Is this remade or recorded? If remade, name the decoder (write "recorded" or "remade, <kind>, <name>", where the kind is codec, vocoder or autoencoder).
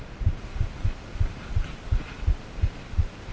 recorded